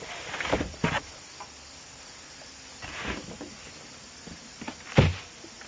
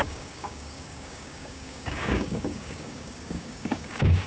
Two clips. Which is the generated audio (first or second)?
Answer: second